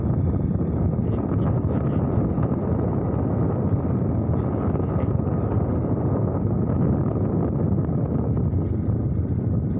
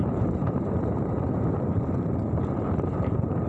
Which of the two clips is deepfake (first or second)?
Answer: second